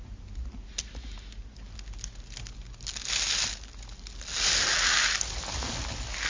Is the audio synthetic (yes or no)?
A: no